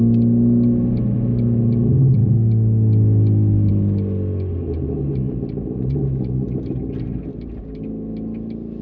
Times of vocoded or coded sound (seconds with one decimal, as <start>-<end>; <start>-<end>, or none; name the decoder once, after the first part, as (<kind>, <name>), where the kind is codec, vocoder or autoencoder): none